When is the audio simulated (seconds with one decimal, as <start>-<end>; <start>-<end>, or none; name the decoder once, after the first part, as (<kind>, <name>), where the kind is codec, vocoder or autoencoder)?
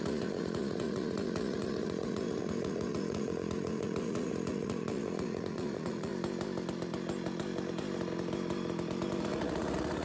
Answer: 0.0-6.1 (vocoder, Vocos); 9.2-10.0